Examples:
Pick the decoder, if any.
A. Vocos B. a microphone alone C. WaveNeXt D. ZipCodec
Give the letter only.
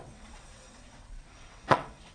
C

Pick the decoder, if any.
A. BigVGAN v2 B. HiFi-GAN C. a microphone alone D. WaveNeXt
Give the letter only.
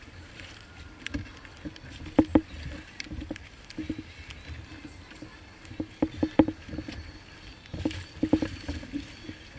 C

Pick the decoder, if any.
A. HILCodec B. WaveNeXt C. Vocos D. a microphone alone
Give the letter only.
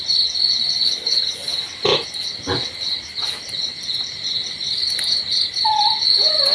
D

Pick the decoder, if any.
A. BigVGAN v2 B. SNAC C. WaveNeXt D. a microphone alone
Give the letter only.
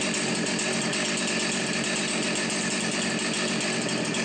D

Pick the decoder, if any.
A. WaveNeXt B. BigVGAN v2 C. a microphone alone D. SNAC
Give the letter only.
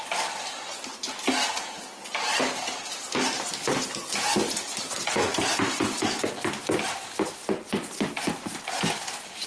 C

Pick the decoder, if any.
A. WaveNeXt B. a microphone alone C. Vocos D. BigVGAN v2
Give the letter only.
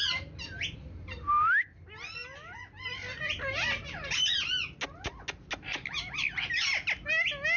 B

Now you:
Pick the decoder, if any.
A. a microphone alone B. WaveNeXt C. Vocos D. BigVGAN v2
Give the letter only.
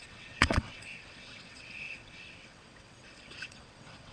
B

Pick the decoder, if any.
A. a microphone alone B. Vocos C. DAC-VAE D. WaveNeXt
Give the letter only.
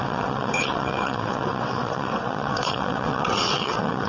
D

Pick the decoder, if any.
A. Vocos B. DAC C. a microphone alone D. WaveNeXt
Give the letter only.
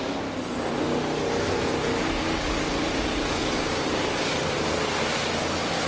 C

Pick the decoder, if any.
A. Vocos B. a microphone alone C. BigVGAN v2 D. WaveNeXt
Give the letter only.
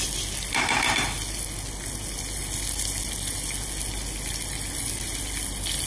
B